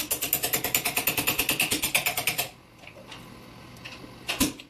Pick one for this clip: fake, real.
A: real